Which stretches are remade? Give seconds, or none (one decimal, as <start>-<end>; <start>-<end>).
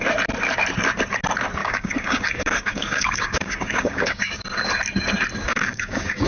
1.6-4.4; 5.4-6.3